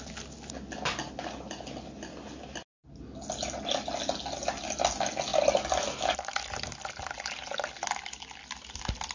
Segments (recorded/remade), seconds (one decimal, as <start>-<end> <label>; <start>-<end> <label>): 0.0-9.1 recorded